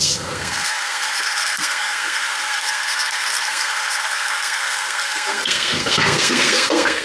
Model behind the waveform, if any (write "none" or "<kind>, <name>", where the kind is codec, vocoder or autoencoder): codec, SNAC